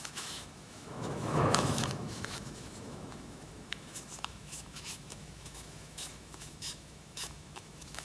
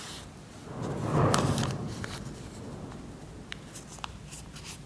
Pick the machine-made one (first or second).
first